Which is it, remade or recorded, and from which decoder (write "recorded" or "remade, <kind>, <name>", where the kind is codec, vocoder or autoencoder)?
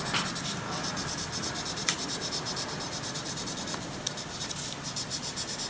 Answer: recorded